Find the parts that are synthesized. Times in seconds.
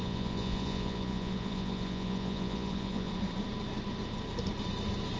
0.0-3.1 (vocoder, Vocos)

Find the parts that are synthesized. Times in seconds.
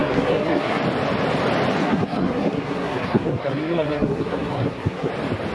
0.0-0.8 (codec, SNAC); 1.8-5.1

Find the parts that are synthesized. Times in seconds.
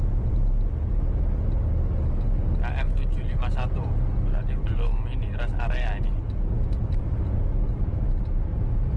none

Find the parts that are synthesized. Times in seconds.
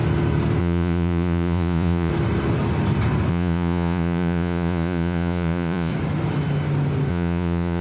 0.6-2.1 (vocoder, Vocos); 3.3-5.9; 7.1-7.8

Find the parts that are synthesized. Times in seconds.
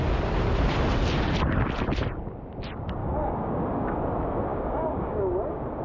3.0-4.0 (codec, DAC); 4.5-5.2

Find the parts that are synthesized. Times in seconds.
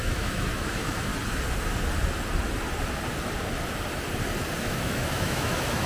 0.0-1.1 (autoencoder, DAC-VAE); 4.6-5.9